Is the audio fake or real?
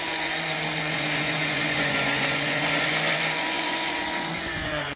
fake